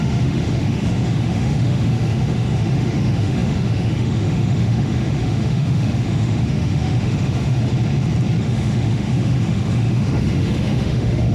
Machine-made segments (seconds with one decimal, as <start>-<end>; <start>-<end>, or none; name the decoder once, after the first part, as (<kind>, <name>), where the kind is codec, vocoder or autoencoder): 0.0-7.7 (autoencoder, DAC-VAE); 8.4-11.3